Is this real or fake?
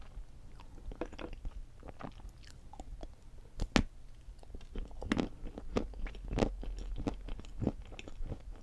real